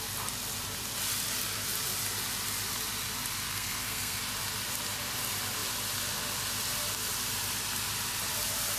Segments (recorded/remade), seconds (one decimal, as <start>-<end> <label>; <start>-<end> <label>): 0.0-3.5 recorded; 3.5-4.2 remade; 4.2-8.8 recorded